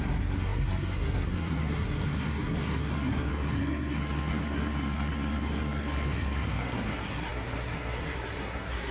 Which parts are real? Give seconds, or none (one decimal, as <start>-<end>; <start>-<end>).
none